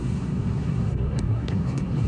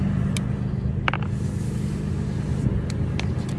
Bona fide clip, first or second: second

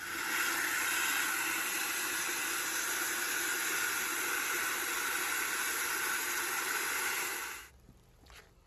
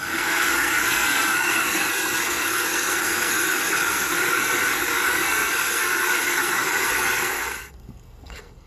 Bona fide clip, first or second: first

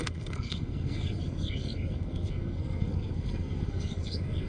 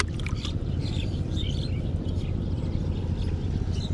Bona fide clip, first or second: second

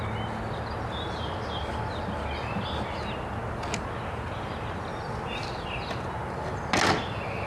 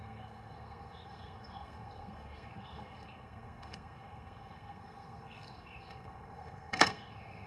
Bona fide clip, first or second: first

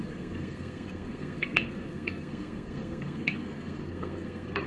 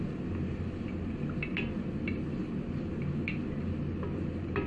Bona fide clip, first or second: second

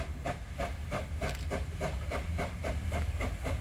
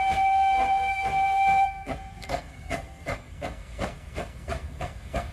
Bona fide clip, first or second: first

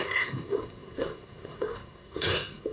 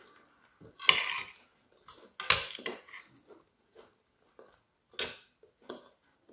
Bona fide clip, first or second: second